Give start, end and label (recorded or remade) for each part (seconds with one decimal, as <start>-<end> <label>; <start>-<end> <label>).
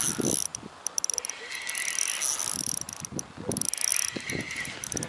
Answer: 0.0-5.1 recorded